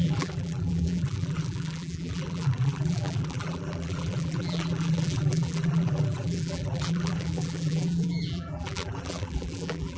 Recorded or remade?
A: remade